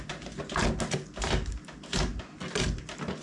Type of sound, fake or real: real